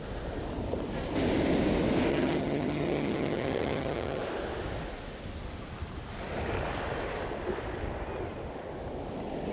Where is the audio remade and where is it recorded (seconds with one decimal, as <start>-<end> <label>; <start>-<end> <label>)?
0.0-2.1 recorded; 2.1-4.2 remade; 4.2-9.5 recorded